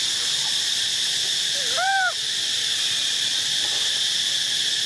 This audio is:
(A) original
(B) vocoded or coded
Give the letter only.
B